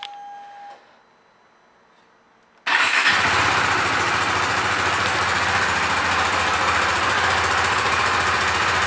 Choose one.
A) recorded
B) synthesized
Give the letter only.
A